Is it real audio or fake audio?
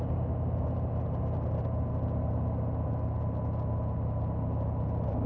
real